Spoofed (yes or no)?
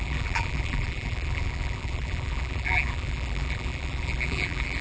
yes